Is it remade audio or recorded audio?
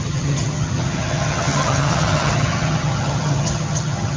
remade